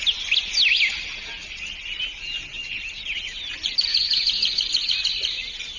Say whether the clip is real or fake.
real